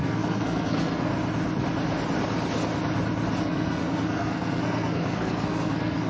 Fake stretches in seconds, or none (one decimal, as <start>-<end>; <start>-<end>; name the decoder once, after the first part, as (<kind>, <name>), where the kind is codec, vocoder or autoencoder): 0.0-1.1 (codec, SNAC); 3.4-6.1